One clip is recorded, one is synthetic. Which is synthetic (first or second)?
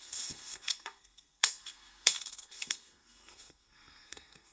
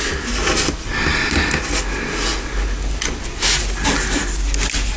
first